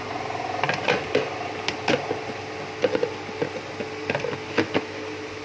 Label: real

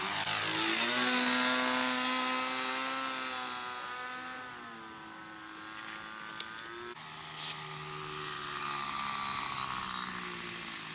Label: real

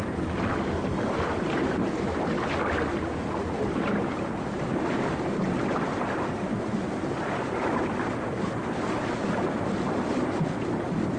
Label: real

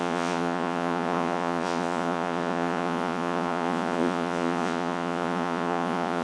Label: fake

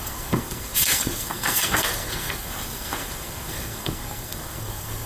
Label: fake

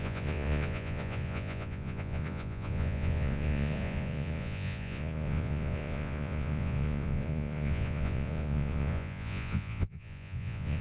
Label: fake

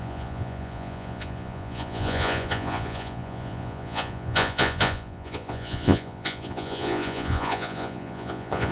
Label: fake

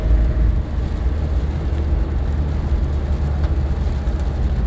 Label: real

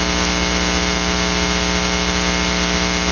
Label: real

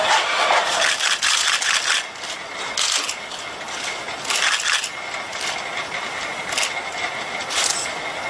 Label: real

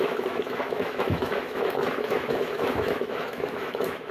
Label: fake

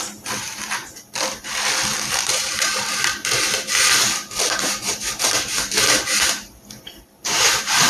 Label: fake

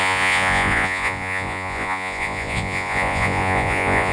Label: fake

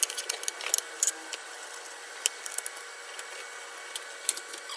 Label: real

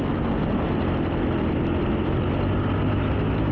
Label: real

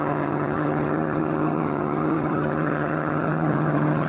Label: fake